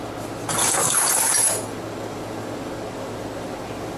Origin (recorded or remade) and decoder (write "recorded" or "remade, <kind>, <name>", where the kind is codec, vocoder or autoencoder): recorded